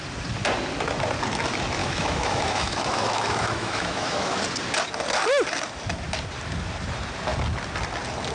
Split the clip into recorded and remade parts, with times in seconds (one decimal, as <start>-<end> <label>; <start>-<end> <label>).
0.0-1.8 recorded; 1.8-4.4 remade; 4.4-8.3 recorded